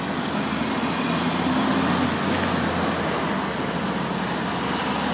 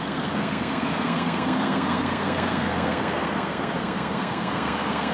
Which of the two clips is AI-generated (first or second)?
second